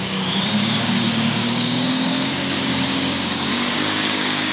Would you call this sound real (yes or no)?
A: no